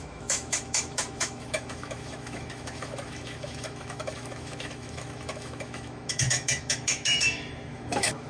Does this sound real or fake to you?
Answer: fake